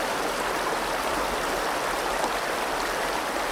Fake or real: real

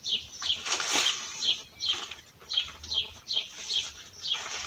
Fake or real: real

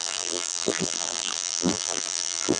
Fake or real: fake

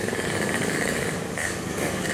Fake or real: fake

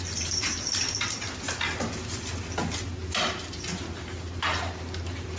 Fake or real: real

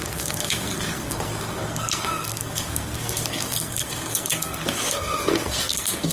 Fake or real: fake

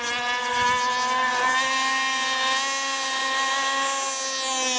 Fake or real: real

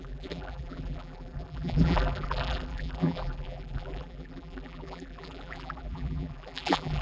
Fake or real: fake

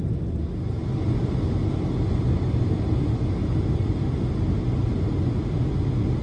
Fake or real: real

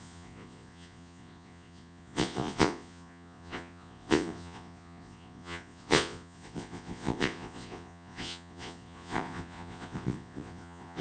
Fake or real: fake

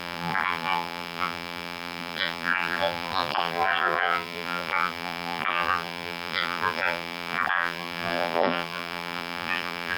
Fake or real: fake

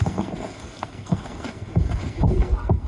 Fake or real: fake